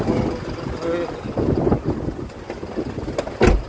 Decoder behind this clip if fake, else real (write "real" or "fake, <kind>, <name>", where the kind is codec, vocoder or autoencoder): real